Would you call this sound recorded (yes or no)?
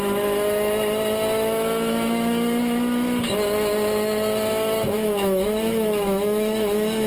no